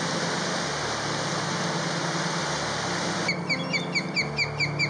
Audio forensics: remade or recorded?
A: recorded